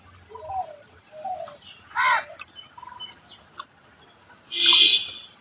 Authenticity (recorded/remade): recorded